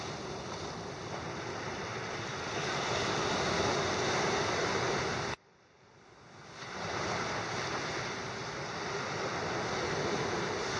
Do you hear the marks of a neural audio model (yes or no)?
no